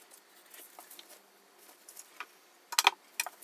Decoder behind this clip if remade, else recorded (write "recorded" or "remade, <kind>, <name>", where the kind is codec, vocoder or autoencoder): recorded